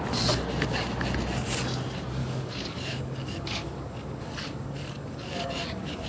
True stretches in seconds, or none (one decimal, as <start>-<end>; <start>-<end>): 0.0-2.2